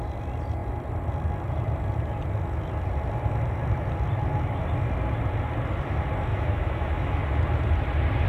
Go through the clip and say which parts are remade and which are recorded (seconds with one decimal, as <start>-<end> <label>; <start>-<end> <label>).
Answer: 0.0-6.3 recorded; 6.3-7.2 remade; 7.2-8.3 recorded